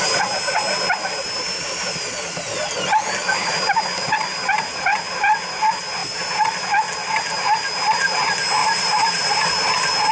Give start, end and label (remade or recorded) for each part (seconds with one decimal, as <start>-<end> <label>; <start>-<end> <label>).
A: 0.0-6.0 recorded; 6.0-6.6 remade; 6.6-8.6 recorded; 8.6-9.5 remade; 9.5-10.1 recorded